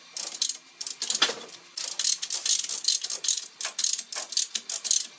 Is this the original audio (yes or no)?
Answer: yes